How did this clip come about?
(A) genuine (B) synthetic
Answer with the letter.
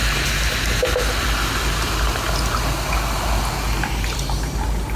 A